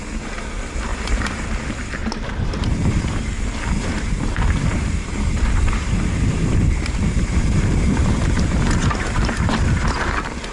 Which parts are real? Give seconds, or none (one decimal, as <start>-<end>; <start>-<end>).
0.0-0.9; 1.6-2.0; 2.8-4.6; 8.5-10.5

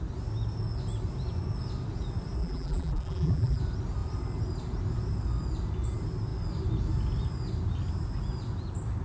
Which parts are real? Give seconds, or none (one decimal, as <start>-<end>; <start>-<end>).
0.0-2.4; 3.6-9.0

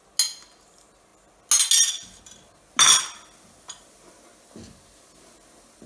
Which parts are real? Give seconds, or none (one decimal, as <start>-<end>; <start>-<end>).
0.0-5.9

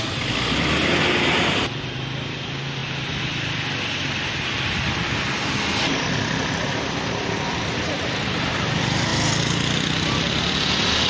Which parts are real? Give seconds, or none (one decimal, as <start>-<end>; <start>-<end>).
0.0-11.1